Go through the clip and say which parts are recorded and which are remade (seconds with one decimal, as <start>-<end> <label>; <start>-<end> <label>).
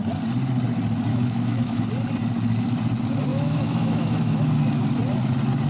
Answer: 0.0-1.1 recorded; 1.1-1.8 remade; 1.8-3.3 recorded; 3.3-4.5 remade; 4.5-5.7 recorded